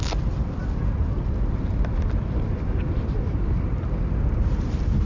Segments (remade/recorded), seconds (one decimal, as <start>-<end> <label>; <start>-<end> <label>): 0.0-5.1 recorded